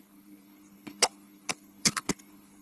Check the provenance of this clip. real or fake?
fake